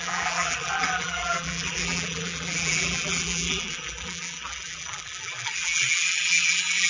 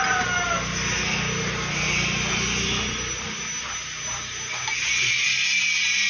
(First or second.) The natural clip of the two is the second